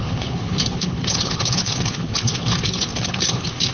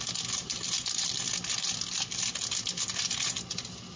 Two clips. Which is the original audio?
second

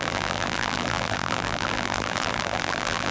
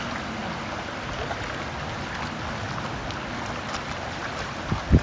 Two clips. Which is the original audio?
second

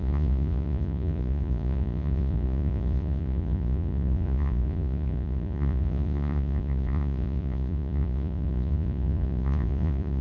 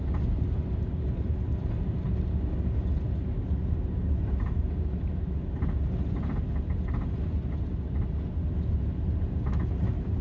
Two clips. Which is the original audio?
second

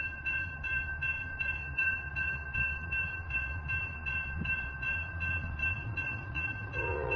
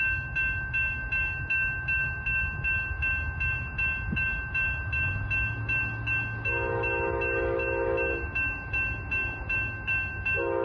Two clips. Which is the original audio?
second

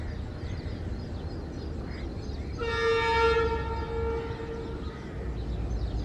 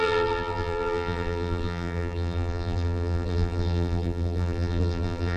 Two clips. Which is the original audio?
first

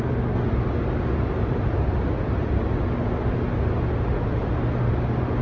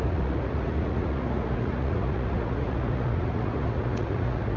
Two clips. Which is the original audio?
first